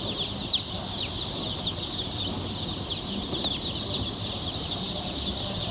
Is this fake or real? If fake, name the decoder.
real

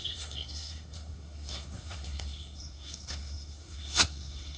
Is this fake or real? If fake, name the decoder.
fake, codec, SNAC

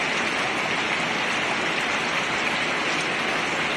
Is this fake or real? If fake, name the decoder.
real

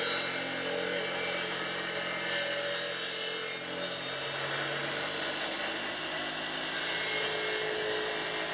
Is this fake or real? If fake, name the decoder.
real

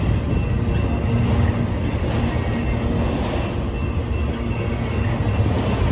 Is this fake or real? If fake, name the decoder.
real